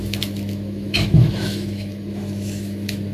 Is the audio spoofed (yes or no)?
yes